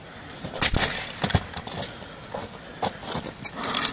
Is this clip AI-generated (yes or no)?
no